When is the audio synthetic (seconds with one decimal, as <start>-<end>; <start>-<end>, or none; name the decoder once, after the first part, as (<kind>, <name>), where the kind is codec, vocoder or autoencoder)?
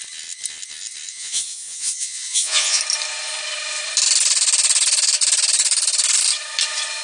1.1-2.8 (vocoder, Vocos)